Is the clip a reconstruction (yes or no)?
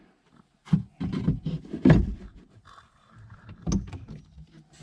no